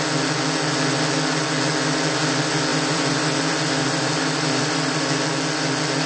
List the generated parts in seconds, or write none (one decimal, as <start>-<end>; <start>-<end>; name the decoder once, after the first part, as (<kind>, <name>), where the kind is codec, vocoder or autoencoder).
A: 2.7-5.0 (vocoder, BigVGAN v2)